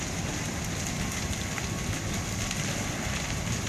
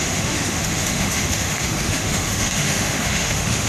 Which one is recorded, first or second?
first